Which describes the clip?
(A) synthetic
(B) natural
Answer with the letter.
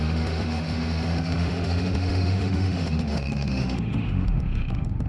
A